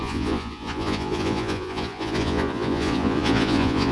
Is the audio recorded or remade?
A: remade